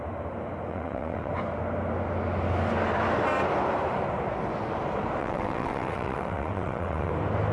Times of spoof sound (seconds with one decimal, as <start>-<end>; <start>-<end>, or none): 0.7-1.3; 5.2-7.1